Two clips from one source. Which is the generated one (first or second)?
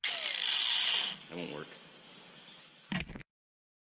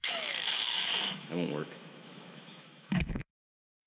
second